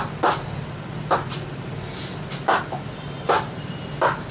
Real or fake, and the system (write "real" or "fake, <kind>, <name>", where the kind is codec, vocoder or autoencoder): real